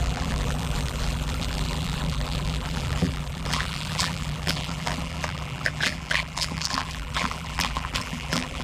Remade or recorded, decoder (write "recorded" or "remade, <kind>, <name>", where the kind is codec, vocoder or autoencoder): remade, vocoder, BigVGAN v2